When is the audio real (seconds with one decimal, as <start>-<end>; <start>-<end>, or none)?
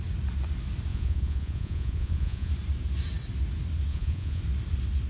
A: 0.0-0.9; 2.5-3.9; 4.4-5.1